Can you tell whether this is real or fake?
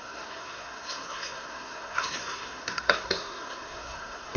fake